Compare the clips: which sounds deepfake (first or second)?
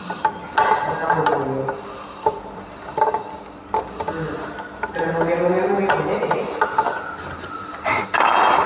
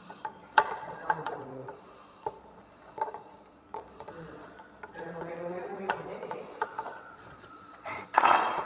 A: second